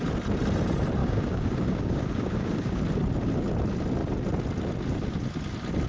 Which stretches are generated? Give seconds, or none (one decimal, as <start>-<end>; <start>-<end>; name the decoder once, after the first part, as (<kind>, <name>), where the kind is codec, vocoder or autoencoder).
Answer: 1.0-2.8 (codec, DAC)